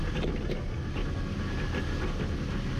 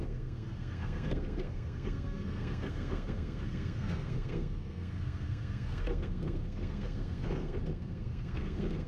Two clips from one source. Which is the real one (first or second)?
first